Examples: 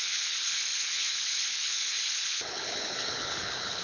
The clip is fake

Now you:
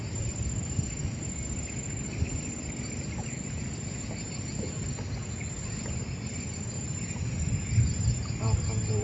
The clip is real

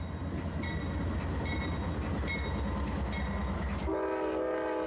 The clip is real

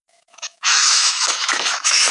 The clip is fake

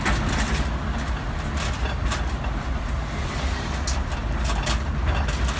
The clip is real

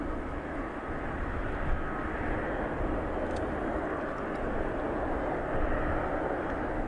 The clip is real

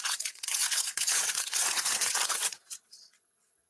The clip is fake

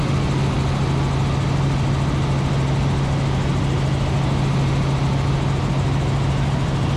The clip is real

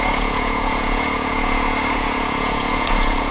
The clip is fake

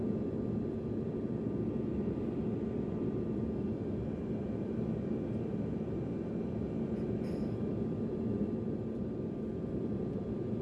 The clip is real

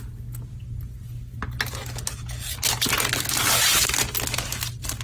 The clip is real